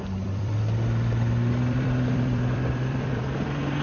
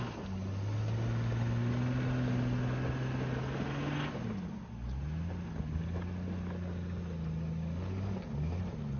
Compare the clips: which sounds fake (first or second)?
first